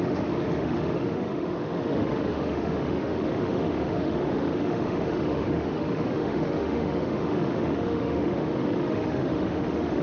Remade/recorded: remade